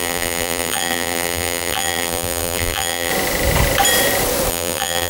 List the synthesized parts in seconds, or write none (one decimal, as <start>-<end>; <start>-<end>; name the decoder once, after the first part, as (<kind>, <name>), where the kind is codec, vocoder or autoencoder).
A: 0.0-3.1 (vocoder, BigVGAN v2); 4.5-5.1